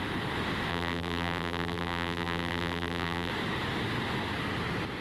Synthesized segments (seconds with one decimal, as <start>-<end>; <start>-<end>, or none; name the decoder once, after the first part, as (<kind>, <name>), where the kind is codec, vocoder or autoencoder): 0.7-3.3 (vocoder, BigVGAN v2)

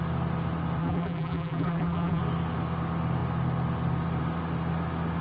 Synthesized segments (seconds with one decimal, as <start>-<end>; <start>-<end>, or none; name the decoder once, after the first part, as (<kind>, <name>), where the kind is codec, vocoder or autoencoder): 0.8-2.2 (vocoder, BigVGAN v2)

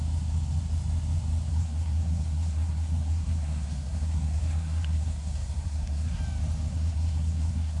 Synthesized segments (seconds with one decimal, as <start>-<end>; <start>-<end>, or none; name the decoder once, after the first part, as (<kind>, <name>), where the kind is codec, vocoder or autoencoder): 1.5-6.2 (codec, SNAC); 6.7-7.8

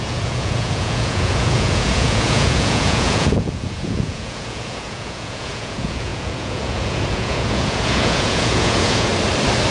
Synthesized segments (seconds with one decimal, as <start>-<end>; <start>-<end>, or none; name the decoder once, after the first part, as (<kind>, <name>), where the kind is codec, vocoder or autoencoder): 0.0-9.1 (vocoder, Vocos)

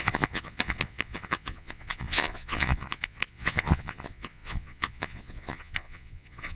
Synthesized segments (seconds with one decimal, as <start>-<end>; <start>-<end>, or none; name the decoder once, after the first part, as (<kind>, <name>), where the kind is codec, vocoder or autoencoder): 0.0-6.5 (vocoder, Vocos)

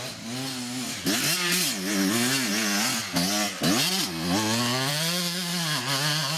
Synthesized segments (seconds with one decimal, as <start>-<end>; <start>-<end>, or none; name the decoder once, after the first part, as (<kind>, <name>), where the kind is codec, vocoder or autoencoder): none